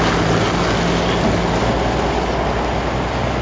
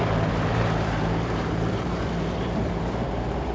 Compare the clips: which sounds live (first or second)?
first